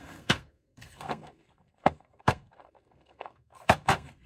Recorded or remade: remade